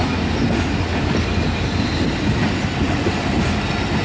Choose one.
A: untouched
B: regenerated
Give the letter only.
A